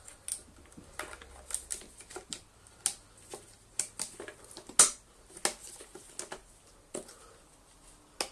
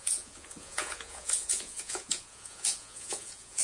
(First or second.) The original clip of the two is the first